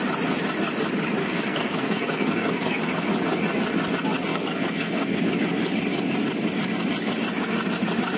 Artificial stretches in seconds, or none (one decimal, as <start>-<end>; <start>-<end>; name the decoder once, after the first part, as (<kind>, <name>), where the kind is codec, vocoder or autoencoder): 1.2-2.9 (codec, SNAC); 4.3-5.2

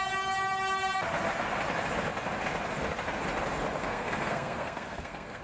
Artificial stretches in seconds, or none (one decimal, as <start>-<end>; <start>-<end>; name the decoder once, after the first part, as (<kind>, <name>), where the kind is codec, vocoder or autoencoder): 3.8-5.4 (codec, SNAC)

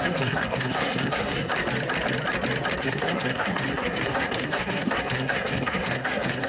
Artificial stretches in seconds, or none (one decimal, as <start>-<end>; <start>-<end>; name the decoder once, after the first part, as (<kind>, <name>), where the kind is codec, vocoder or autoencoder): 0.0-1.5 (codec, SNAC); 2.8-6.5

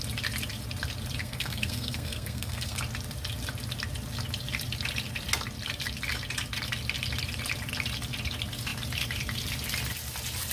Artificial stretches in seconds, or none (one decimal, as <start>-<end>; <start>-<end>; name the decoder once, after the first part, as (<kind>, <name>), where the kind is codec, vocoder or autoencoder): 1.2-2.8 (codec, SNAC)

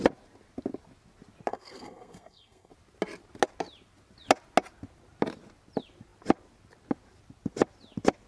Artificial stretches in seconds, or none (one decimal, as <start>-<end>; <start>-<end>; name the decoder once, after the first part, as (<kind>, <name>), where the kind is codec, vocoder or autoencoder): 1.5-2.7 (codec, SNAC)

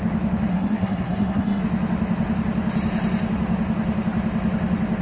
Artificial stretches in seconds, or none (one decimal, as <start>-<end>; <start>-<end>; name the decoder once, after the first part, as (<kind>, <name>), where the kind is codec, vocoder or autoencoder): 0.5-1.6 (codec, SNAC)

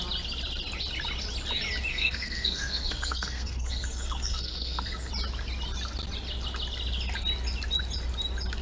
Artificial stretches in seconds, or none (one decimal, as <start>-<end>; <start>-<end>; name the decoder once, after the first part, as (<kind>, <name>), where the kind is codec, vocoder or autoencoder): 1.9-5.1 (codec, SNAC)